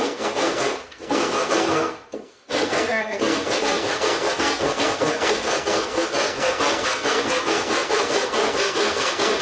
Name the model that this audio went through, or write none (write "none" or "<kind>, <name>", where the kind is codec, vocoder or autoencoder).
codec, SNAC